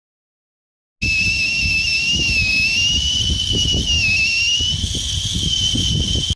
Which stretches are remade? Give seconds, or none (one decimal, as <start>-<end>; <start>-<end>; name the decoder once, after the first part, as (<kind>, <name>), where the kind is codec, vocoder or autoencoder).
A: none